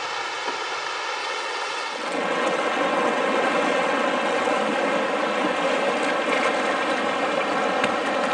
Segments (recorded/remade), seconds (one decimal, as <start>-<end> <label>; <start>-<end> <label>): 0.0-1.2 recorded; 1.2-4.6 remade; 4.6-8.3 recorded